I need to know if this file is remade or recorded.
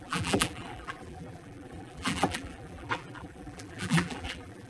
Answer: remade